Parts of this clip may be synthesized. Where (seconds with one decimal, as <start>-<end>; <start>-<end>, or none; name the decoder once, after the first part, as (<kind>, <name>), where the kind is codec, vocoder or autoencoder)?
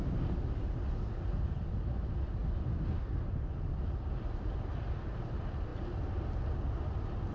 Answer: none